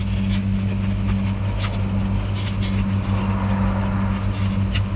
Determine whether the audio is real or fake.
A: real